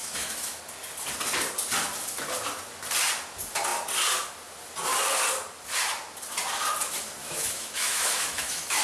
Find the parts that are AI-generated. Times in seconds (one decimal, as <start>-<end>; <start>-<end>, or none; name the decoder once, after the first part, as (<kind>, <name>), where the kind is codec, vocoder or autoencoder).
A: 0.0-0.6 (autoencoder, DAC-VAE); 7.2-8.8